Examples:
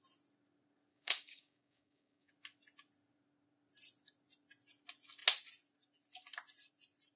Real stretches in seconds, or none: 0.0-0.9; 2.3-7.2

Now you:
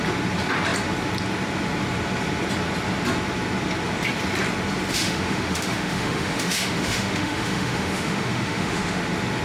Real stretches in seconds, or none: 0.0-4.9; 9.0-9.4

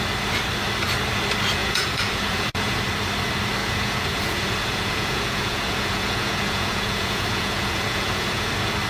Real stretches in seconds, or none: 0.0-1.6; 2.8-3.6; 8.5-8.9

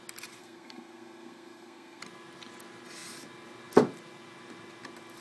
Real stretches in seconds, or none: 0.0-0.4; 2.0-5.2

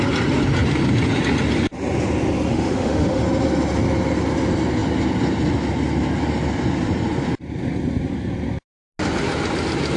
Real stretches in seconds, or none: 0.0-2.5; 3.2-10.0